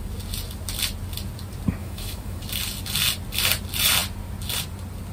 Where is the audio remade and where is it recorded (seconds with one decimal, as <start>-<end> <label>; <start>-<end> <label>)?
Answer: 0.0-1.8 recorded; 1.8-2.4 remade; 2.4-5.1 recorded